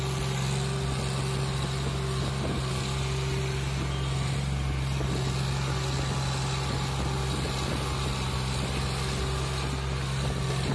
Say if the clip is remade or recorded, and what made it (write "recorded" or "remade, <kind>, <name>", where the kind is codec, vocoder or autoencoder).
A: recorded